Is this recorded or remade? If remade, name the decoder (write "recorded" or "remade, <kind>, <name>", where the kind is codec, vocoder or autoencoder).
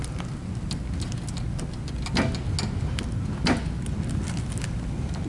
recorded